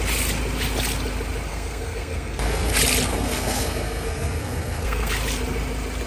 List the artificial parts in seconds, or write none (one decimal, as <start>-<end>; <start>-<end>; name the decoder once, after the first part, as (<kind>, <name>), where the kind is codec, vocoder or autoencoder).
1.5-2.7 (codec, SNAC); 3.1-5.1